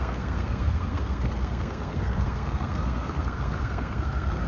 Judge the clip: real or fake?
fake